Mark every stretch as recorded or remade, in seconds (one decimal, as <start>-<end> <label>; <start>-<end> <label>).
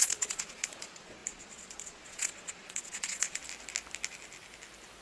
0.0-3.4 remade; 3.4-5.0 recorded